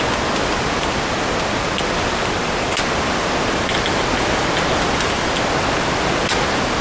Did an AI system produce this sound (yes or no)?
no